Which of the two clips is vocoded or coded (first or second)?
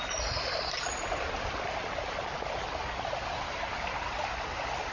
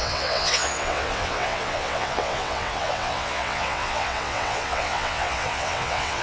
second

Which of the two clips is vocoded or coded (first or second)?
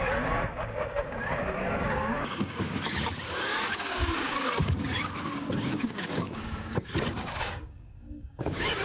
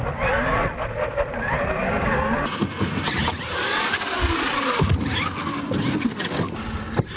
first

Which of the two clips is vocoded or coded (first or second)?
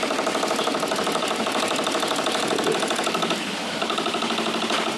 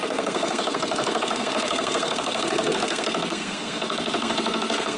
second